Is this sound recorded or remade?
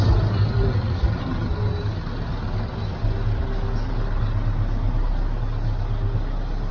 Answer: recorded